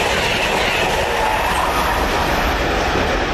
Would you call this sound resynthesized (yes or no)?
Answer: no